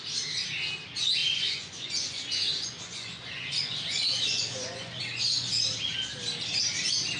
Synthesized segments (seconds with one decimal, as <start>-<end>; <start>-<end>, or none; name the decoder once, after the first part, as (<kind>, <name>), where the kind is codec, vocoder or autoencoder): 1.2-5.5 (vocoder, Vocos)